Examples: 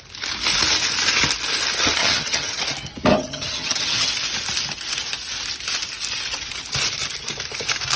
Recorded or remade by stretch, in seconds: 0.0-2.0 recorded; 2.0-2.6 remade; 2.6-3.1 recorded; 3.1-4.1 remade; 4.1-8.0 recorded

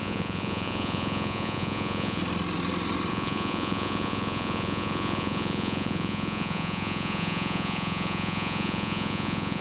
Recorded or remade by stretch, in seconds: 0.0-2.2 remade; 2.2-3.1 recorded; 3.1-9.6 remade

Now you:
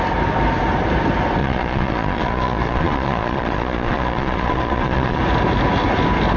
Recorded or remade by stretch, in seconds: 0.0-1.4 recorded; 1.4-5.2 remade; 5.2-6.4 recorded

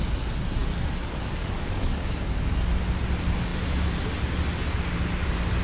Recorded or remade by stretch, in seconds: 0.0-0.6 recorded; 0.6-2.7 remade; 2.7-5.6 recorded

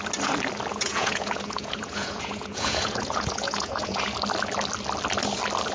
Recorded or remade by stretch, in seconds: 0.0-0.7 recorded; 0.7-4.0 remade; 4.0-5.7 recorded

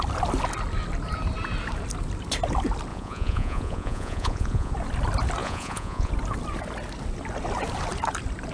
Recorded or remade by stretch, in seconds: 0.0-2.9 recorded; 2.9-4.7 remade; 4.7-5.4 recorded; 5.4-6.1 remade; 6.1-8.5 recorded